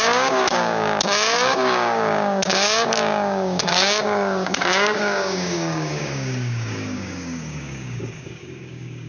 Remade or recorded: remade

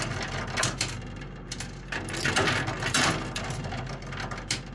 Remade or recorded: recorded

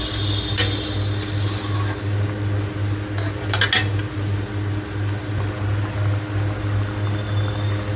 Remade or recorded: recorded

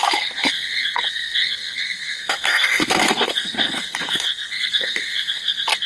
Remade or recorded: remade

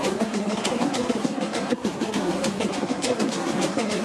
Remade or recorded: remade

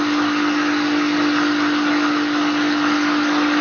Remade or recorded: recorded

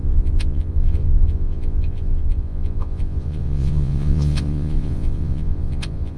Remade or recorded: remade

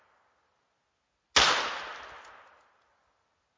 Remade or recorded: recorded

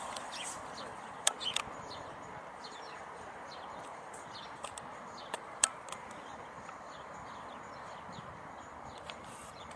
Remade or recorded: remade